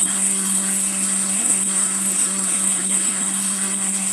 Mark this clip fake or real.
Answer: fake